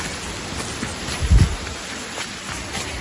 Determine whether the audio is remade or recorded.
recorded